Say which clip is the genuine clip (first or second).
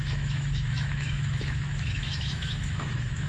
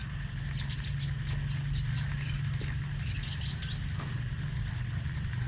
second